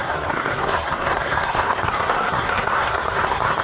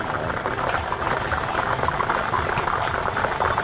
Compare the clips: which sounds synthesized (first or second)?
first